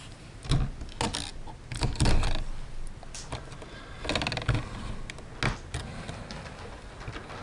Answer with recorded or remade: recorded